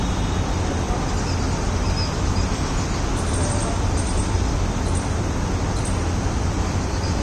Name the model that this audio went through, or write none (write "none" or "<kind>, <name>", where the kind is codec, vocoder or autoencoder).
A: none